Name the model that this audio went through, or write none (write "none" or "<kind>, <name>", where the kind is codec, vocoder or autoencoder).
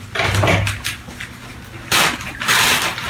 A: none